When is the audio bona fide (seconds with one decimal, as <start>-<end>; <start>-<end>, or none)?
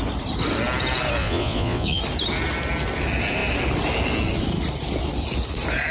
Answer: 0.0-1.2; 2.0-5.9